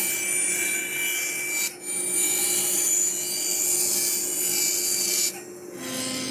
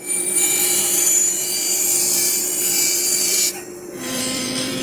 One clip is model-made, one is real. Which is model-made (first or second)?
second